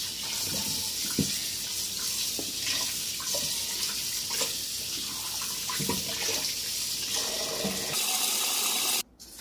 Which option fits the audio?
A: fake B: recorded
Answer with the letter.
B